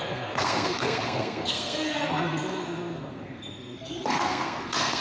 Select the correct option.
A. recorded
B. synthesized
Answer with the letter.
B